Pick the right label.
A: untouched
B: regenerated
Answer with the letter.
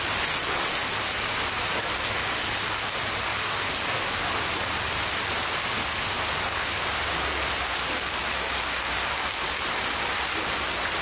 A